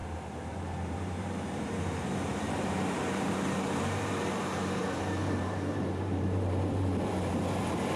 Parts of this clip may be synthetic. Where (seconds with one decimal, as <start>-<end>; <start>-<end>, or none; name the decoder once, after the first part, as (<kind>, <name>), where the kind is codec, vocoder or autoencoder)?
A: 0.0-8.0 (vocoder, BigVGAN v2)